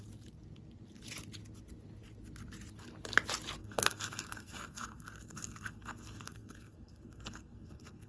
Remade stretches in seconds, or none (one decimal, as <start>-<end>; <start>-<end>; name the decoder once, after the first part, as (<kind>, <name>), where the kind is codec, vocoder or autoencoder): 3.6-8.1 (codec, SNAC)